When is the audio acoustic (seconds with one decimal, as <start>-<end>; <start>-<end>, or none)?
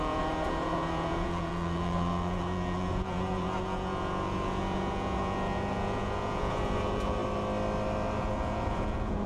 7.2-8.2